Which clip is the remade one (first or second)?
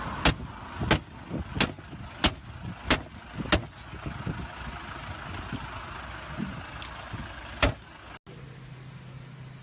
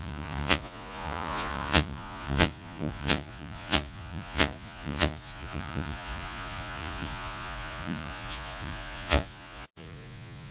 second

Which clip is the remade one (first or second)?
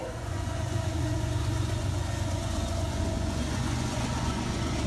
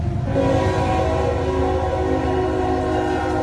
first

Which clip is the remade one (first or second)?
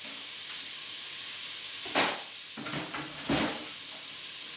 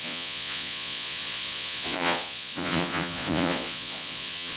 second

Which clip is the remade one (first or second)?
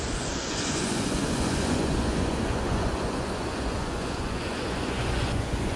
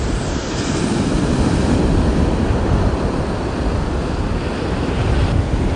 first